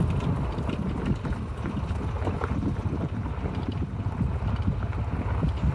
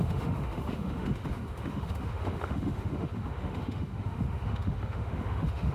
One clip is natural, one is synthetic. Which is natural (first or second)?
first